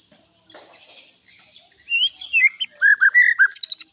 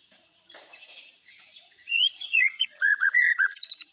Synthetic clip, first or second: second